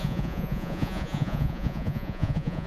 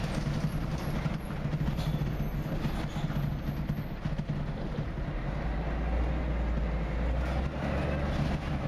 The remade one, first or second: first